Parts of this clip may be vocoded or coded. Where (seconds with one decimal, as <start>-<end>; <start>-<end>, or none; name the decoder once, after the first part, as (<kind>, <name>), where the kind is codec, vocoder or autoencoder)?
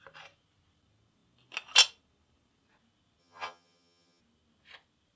3.2-4.2 (vocoder, HiFi-GAN)